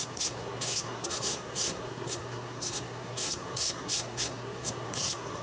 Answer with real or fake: fake